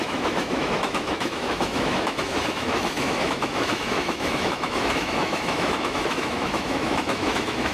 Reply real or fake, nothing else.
fake